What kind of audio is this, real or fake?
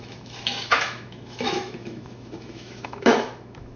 fake